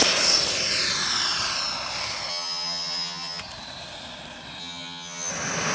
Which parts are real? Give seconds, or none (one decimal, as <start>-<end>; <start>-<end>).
0.0-2.3; 3.4-4.6; 5.3-5.7